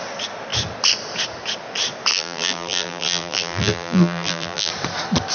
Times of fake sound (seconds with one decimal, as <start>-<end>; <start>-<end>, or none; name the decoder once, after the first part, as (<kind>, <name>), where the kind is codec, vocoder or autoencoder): 2.1-4.7 (vocoder, BigVGAN v2)